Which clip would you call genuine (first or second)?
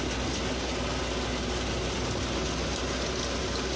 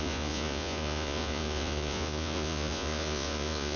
first